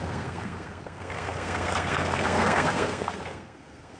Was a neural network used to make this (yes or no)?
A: yes